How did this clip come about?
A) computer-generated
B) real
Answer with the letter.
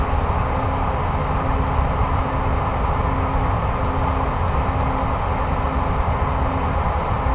B